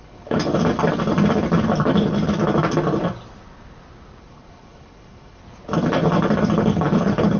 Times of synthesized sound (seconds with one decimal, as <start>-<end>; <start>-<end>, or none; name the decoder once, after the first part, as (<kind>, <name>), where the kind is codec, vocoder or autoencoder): 0.0-0.5 (codec, HILCodec); 4.2-5.4; 6.6-7.4

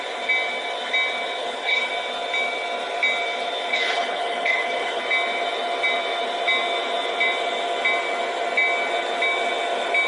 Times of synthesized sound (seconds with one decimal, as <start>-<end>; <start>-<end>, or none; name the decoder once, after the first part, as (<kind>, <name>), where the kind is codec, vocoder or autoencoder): 1.4-1.9 (codec, HILCodec); 3.7-5.0

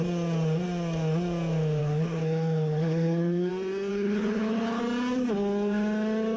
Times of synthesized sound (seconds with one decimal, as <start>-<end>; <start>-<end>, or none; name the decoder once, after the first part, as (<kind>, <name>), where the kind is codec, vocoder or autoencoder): 1.8-3.5 (codec, HILCodec); 3.9-4.8

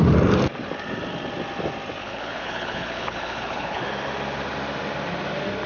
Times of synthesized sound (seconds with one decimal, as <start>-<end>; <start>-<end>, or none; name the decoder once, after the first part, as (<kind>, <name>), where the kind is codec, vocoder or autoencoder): 2.0-3.8 (codec, HILCodec)

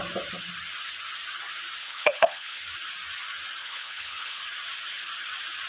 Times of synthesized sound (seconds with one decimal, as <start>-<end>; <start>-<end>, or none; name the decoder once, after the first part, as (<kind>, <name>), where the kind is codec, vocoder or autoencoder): 1.8-2.6 (codec, HILCodec); 3.6-4.4

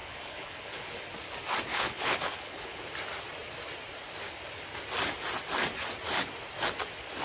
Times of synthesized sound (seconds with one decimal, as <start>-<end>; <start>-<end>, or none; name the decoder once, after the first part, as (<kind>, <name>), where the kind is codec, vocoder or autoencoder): 0.0-1.1 (codec, HILCodec); 1.7-2.8